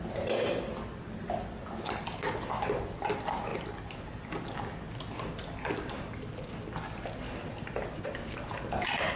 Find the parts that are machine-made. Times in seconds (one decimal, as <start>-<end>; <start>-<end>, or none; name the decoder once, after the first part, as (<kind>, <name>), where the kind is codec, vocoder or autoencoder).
none